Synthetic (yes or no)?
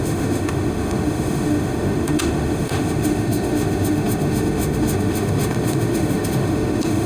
yes